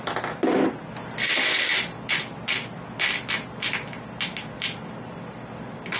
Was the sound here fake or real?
real